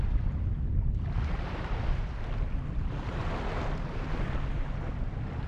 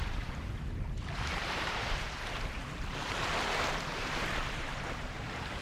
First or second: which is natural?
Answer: first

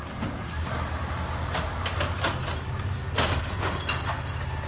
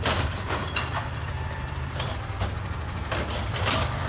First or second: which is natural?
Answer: first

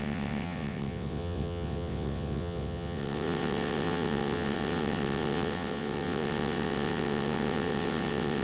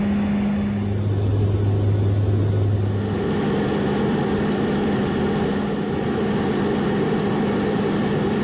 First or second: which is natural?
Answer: second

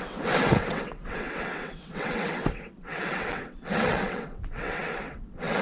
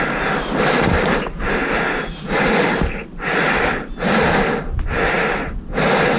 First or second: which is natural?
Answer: second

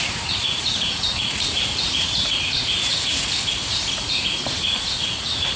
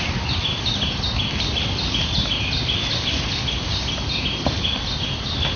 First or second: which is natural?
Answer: second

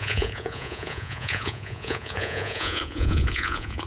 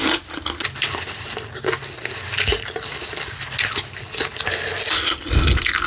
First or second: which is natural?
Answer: second